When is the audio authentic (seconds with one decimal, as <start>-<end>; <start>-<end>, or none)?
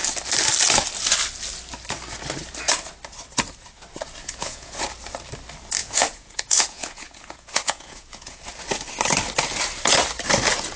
0.0-4.2; 4.8-5.8; 8.4-10.8